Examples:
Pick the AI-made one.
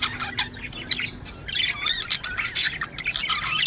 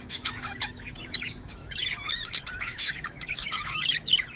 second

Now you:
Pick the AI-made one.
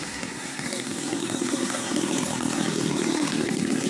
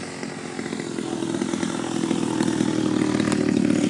first